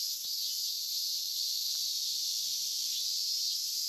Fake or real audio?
fake